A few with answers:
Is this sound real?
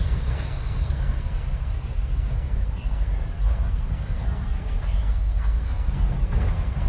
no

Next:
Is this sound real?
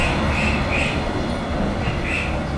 yes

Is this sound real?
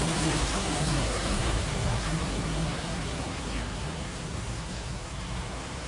no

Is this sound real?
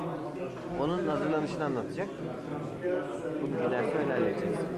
yes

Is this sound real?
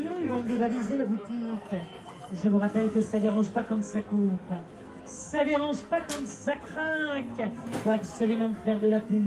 no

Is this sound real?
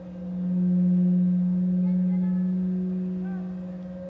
yes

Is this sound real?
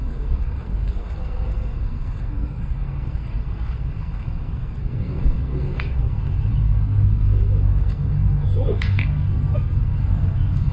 no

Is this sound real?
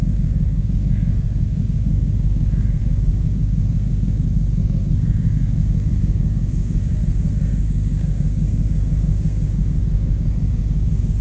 no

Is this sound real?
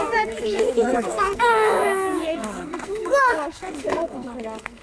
no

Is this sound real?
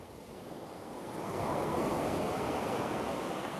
no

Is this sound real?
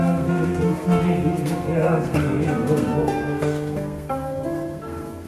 no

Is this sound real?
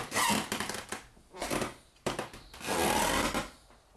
yes